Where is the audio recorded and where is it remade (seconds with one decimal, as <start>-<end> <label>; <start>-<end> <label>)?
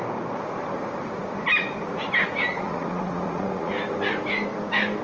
0.0-2.5 recorded; 2.5-3.7 remade; 3.7-5.0 recorded